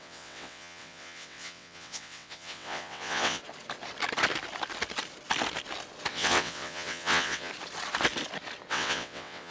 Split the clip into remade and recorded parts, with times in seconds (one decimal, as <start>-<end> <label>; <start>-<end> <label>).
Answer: 0.0-3.4 remade; 3.4-6.1 recorded; 6.1-7.5 remade; 7.5-8.7 recorded; 8.7-9.5 remade

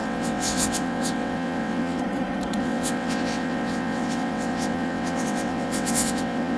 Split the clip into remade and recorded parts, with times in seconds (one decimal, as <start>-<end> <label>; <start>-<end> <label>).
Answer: 0.0-2.0 remade; 2.0-2.6 recorded; 2.6-6.6 remade

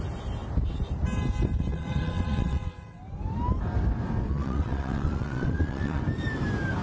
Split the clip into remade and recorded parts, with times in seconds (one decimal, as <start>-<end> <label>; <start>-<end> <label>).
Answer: 0.0-1.7 recorded; 1.7-3.0 remade; 3.0-4.3 recorded; 4.3-6.0 remade; 6.0-6.8 recorded

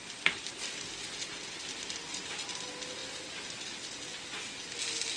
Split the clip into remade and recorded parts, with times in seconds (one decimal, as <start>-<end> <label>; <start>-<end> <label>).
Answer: 0.0-5.2 recorded

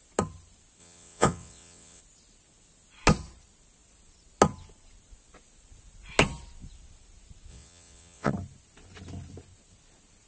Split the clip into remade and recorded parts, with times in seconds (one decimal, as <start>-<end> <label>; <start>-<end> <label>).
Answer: 0.0-0.8 recorded; 0.8-2.0 remade; 2.0-7.5 recorded; 7.5-8.3 remade; 8.3-10.3 recorded

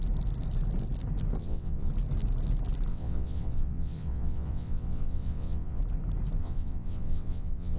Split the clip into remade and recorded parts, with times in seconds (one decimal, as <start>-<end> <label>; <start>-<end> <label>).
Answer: 0.0-1.4 recorded; 1.4-1.9 remade; 1.9-2.9 recorded; 2.9-5.8 remade; 5.8-6.4 recorded; 6.4-7.8 remade

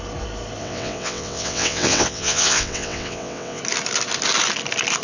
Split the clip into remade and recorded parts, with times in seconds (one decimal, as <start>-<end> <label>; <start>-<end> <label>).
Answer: 0.0-0.6 recorded; 0.6-3.6 remade; 3.6-5.0 recorded

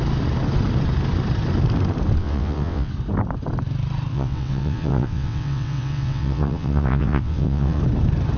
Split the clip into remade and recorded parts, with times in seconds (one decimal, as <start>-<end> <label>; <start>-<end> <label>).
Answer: 0.0-2.2 recorded; 2.2-2.9 remade; 2.9-4.1 recorded; 4.1-7.8 remade; 7.8-8.4 recorded